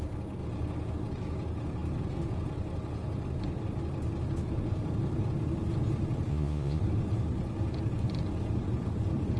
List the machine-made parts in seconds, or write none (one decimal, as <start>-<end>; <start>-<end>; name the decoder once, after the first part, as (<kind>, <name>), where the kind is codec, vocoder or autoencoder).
6.3-6.8 (vocoder, Vocos)